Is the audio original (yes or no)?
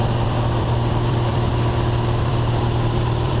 no